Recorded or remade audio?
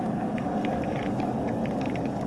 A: remade